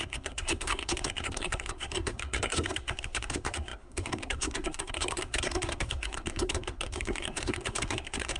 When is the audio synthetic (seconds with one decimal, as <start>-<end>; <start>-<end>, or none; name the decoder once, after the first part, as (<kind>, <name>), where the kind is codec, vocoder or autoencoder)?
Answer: 0.0-8.4 (codec, SNAC)